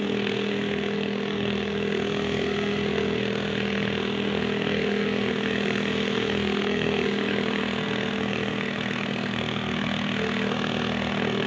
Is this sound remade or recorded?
remade